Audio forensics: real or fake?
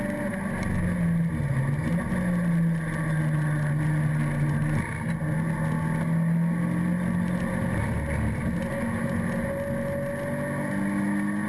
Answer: real